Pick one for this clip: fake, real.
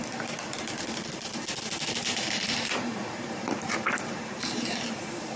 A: fake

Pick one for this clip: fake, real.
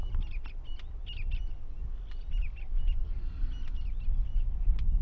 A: real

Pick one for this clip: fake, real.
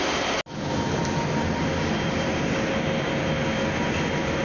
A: real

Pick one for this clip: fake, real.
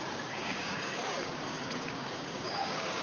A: fake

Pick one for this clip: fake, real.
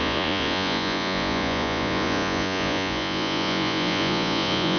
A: fake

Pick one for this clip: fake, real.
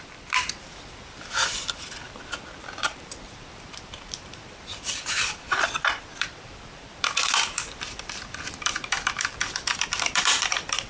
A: fake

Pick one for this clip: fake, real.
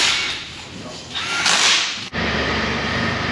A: real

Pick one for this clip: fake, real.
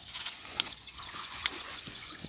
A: fake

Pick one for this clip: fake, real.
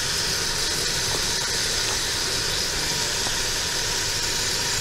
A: real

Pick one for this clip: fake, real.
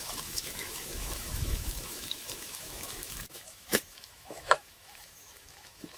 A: fake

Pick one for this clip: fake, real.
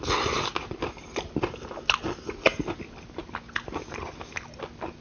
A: real